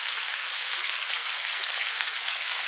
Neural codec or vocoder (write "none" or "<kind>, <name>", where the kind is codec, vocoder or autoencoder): codec, SNAC